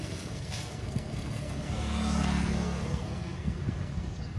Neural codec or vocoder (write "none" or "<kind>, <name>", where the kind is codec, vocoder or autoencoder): codec, SNAC